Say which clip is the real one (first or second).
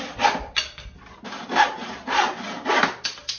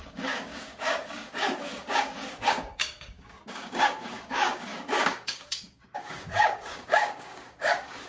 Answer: first